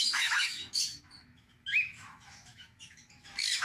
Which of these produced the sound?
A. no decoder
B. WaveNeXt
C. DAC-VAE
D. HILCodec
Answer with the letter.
C